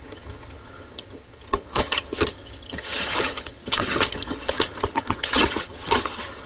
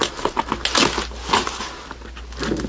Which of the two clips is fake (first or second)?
first